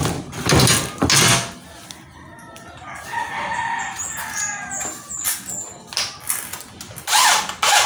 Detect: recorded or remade recorded